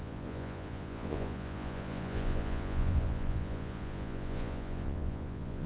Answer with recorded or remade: remade